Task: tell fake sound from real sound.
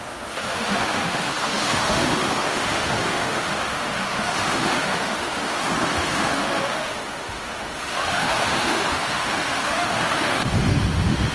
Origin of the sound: fake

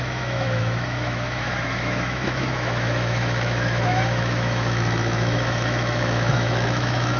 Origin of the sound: fake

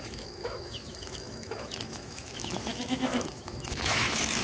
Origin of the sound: fake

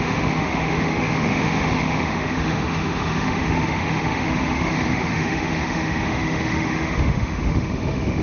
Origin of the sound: fake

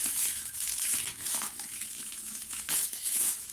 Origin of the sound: fake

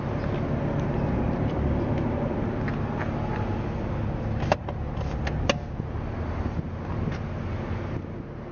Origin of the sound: real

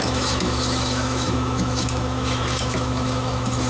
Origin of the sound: fake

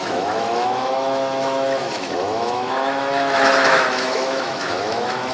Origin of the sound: fake